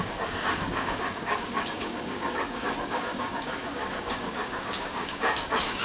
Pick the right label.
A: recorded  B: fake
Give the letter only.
B